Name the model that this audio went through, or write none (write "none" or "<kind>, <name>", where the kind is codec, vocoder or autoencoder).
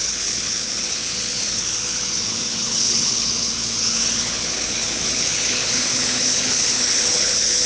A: codec, HILCodec